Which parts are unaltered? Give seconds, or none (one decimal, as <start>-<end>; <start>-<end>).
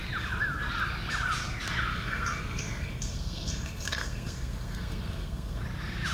0.0-1.9; 5.6-6.1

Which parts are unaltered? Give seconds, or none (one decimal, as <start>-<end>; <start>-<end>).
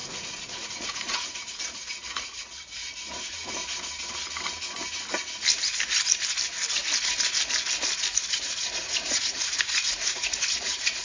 3.6-8.3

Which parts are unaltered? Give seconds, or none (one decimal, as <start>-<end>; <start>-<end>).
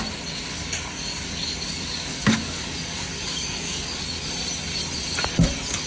0.0-0.5; 4.0-5.9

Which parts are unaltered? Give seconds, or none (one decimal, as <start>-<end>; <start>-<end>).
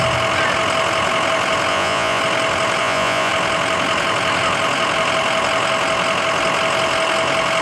0.0-1.7; 2.2-2.8; 3.3-7.6